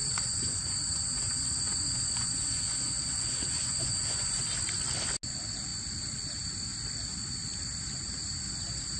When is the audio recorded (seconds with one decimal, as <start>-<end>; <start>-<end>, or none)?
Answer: 4.4-9.0